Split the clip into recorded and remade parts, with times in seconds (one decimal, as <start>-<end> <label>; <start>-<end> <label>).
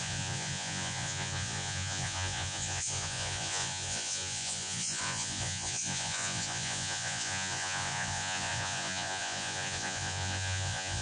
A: 0.0-11.0 remade